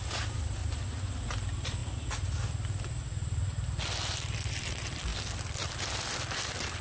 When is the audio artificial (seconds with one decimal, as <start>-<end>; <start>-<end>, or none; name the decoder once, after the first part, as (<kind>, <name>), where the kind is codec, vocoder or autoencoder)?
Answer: 0.0-0.6 (vocoder, BigVGAN v2); 1.1-1.8; 4.5-5.1; 5.9-6.8